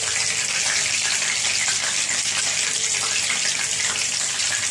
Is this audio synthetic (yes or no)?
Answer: no